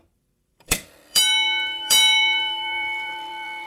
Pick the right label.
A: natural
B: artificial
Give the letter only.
B